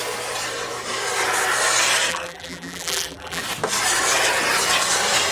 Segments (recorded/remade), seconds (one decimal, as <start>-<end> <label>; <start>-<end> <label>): 0.0-2.1 recorded; 2.1-3.4 remade; 3.4-5.3 recorded